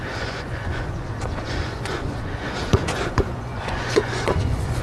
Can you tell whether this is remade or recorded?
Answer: remade